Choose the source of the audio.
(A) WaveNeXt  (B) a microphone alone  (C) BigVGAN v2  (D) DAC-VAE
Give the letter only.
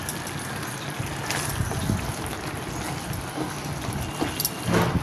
B